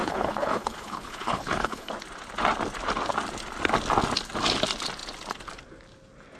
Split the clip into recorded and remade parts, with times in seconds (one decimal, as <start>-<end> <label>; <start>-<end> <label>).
0.0-1.9 remade; 1.9-6.4 recorded